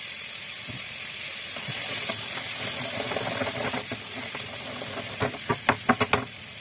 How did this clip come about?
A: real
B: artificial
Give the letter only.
A